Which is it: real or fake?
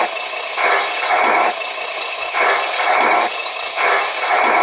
real